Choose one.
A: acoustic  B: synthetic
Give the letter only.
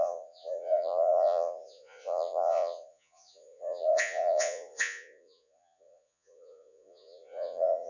B